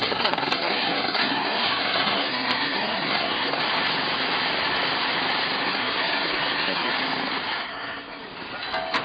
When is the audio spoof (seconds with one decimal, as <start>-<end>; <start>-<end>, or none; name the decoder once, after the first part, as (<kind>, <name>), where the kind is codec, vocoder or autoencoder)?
0.0-3.6 (codec, SNAC); 5.6-6.9; 7.7-8.2